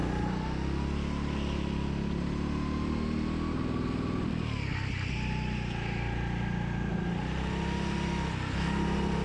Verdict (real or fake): real